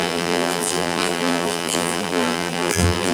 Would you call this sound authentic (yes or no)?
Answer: no